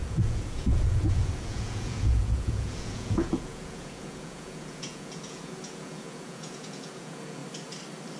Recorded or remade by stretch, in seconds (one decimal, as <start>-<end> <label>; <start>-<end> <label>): 0.0-7.4 remade; 7.4-8.2 recorded